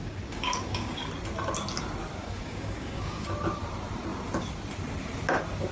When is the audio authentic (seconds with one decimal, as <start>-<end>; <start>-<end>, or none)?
1.1-2.2; 3.3-5.7